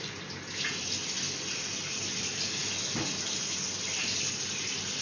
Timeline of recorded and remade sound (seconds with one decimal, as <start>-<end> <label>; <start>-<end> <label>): 0.0-5.0 recorded